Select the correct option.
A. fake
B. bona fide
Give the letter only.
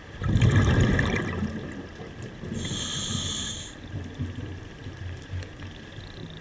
B